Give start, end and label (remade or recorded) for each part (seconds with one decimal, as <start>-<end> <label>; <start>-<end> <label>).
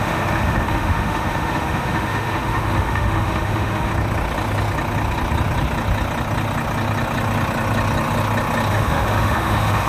0.0-3.9 remade; 3.9-8.7 recorded; 8.7-9.9 remade